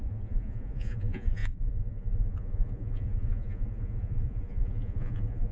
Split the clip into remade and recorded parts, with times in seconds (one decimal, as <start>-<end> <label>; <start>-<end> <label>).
0.0-5.5 remade